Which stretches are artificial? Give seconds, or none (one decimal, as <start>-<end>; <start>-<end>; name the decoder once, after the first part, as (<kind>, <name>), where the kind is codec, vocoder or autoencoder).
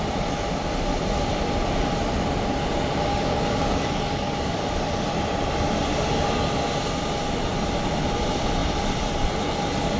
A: 3.1-4.8 (codec, DAC)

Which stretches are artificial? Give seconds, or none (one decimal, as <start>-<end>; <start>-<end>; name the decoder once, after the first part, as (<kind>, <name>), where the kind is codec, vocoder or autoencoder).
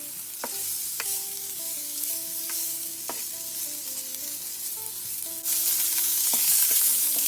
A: 0.9-2.9 (codec, DAC); 5.9-7.3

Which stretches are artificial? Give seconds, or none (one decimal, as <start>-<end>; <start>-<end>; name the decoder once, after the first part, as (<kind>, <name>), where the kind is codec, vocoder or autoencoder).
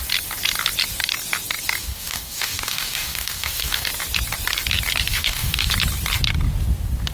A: 1.8-3.9 (codec, DAC); 5.1-5.7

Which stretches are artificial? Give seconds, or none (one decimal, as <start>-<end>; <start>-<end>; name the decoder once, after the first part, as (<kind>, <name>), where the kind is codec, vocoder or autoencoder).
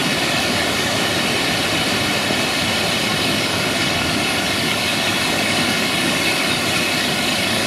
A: 0.0-1.0 (codec, DAC); 3.1-7.7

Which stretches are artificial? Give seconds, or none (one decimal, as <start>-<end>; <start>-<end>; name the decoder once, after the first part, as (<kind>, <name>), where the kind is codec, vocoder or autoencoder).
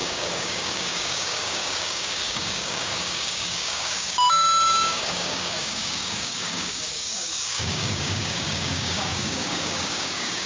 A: 0.0-10.5 (codec, DAC)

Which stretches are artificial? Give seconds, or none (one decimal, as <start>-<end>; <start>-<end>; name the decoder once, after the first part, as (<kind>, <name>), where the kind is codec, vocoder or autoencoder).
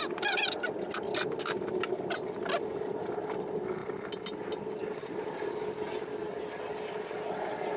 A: none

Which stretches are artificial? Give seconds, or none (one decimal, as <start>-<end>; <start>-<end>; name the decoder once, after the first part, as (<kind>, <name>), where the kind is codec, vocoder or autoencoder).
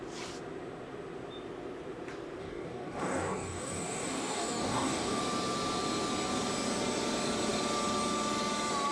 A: 2.4-5.2 (codec, DAC)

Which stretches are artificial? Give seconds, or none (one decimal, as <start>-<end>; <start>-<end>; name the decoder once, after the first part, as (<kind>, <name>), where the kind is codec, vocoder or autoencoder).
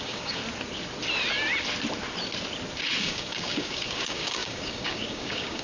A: 0.0-0.4 (codec, DAC); 3.0-5.6